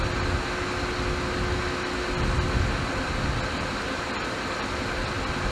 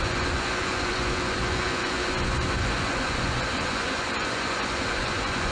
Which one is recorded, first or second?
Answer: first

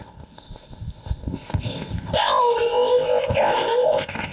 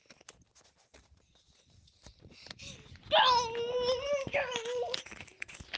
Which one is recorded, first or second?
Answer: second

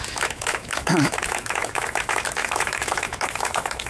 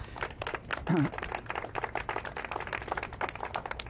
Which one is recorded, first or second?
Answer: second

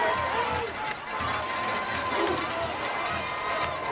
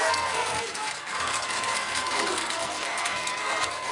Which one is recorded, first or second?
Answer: first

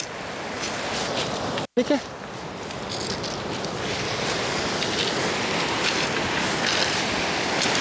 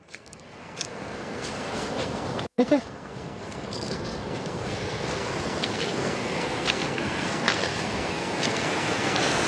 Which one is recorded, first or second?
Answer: first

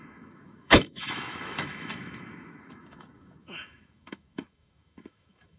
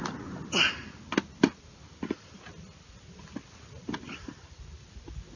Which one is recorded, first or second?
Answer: second